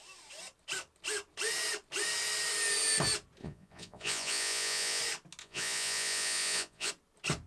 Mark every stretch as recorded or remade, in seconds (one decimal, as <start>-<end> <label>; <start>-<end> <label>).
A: 0.0-3.4 recorded; 3.4-5.0 remade; 5.0-5.4 recorded; 5.4-6.9 remade; 6.9-7.5 recorded